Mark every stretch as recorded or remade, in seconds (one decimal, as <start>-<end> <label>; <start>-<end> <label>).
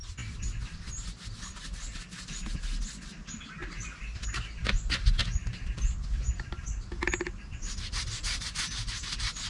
0.0-9.5 recorded